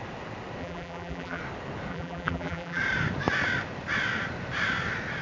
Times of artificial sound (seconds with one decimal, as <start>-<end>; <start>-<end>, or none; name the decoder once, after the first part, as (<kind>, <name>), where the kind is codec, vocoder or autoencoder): 0.6-1.4 (vocoder, BigVGAN v2); 1.9-2.8